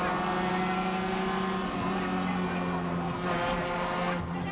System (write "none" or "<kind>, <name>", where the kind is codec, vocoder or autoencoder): none